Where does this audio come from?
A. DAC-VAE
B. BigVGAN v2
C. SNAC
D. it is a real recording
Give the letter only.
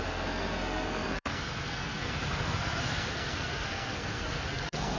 C